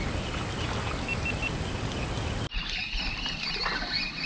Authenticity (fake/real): real